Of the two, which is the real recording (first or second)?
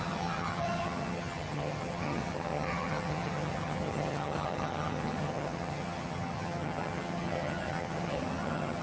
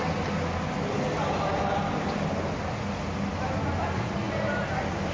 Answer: second